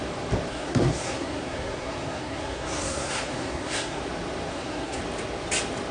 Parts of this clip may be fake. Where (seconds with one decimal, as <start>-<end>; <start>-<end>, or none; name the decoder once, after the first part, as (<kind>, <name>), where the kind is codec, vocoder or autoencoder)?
0.5-4.0 (codec, SNAC); 4.5-5.0